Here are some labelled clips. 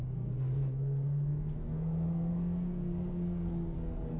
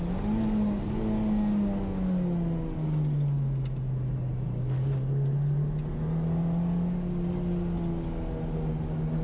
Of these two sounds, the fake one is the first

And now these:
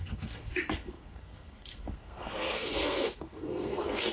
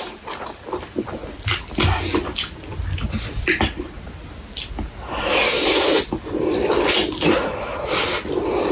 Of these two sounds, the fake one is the first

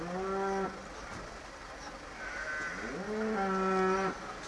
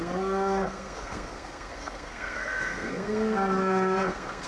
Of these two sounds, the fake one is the second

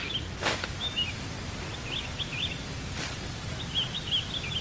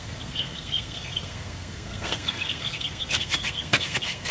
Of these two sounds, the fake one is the second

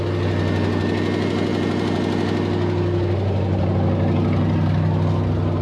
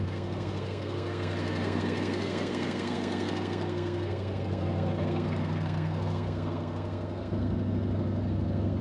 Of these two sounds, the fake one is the second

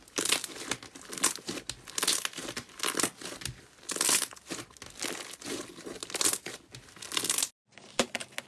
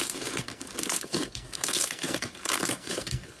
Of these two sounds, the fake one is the second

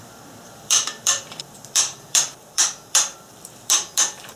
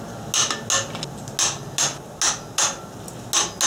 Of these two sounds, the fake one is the first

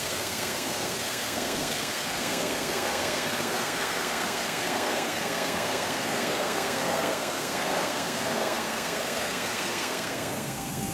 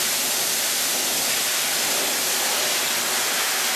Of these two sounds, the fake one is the first